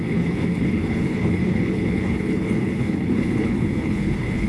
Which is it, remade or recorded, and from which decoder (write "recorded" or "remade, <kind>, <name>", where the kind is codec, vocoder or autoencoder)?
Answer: remade, codec, HILCodec